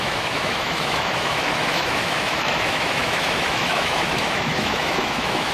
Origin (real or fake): fake